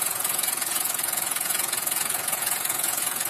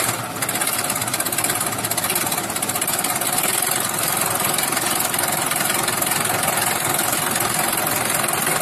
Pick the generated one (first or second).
first